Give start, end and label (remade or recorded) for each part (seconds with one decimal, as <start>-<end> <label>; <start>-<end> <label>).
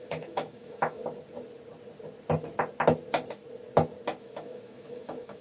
0.0-1.0 remade; 1.0-4.2 recorded; 4.2-5.4 remade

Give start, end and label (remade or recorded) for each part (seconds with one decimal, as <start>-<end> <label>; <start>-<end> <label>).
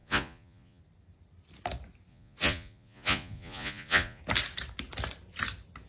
0.0-0.8 remade; 0.8-2.1 recorded; 2.1-4.2 remade; 4.2-5.9 recorded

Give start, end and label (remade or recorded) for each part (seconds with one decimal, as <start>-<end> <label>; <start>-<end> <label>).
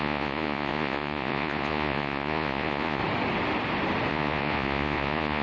0.0-3.0 remade; 3.0-4.1 recorded; 4.1-5.4 remade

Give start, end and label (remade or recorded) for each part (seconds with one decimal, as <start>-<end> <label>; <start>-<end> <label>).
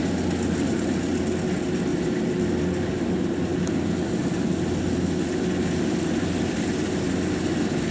0.0-1.9 recorded; 1.9-2.5 remade; 2.5-7.9 recorded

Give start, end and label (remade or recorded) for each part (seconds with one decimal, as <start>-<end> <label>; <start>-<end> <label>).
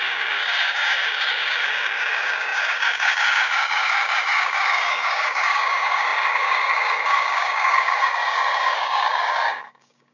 0.0-10.1 remade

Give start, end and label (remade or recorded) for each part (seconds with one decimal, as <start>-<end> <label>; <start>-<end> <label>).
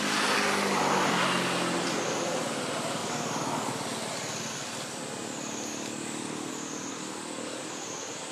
0.0-3.0 recorded; 3.0-3.7 remade; 3.7-5.7 recorded; 5.7-6.5 remade; 6.5-6.9 recorded; 6.9-7.6 remade; 7.6-8.3 recorded